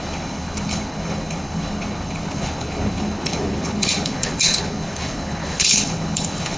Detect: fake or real fake